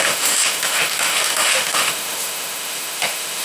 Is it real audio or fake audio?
fake